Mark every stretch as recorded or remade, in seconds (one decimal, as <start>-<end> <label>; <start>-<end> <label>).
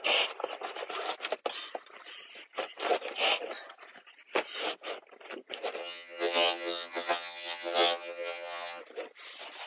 0.0-5.8 recorded; 5.8-8.8 remade; 8.8-9.7 recorded